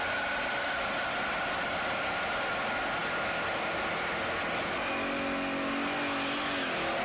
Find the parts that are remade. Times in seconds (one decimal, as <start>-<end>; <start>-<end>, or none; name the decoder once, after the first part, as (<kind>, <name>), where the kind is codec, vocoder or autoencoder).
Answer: none